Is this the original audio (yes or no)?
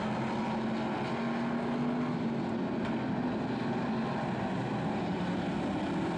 yes